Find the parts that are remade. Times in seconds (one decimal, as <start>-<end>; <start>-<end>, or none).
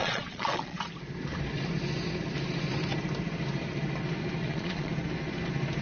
0.0-0.8; 4.4-4.9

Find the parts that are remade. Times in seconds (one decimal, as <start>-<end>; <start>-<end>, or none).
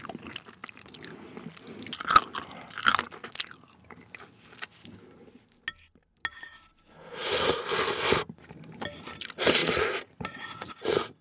9.6-11.2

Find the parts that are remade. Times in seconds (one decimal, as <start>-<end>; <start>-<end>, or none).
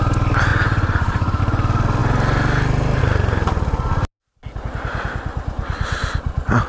0.5-1.4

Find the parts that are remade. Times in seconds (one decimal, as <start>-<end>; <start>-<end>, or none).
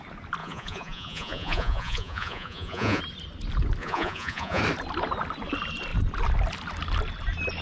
0.4-3.0; 3.8-4.6